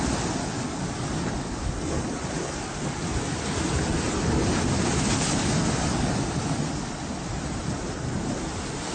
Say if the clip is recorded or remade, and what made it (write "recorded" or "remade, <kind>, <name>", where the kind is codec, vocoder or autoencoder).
recorded